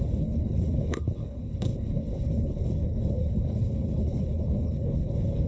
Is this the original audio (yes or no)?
no